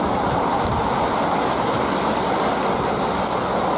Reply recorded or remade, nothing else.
recorded